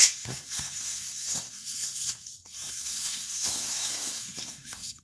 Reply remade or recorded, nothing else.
remade